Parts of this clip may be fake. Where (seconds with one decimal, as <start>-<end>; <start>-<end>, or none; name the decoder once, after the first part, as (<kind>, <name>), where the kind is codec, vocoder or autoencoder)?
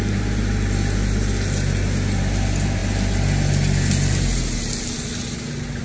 none